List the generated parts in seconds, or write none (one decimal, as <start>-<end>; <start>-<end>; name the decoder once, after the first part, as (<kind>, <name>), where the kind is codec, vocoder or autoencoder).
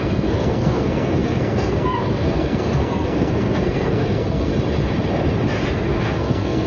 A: 0.0-4.5 (codec, SNAC); 5.7-6.7